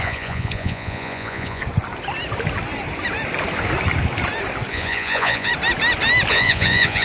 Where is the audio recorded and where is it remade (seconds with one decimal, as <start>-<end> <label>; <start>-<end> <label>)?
0.0-1.6 remade; 1.6-4.7 recorded; 4.7-5.5 remade; 5.5-6.3 recorded; 6.3-7.0 remade